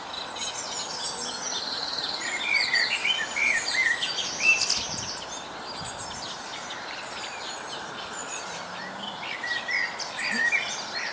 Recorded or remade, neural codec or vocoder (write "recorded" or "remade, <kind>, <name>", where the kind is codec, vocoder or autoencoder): recorded